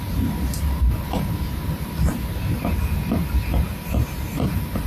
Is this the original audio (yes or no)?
no